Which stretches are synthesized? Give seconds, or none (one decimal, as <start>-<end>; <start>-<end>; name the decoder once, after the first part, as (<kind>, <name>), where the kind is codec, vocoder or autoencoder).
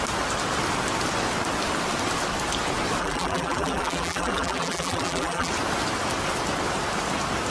3.0-5.5 (vocoder, BigVGAN v2)